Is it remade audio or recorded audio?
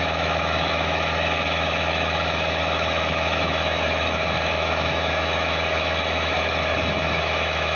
remade